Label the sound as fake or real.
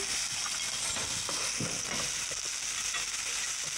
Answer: real